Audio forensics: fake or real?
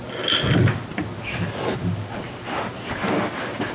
real